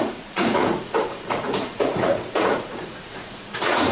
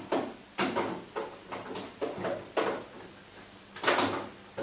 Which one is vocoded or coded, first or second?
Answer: first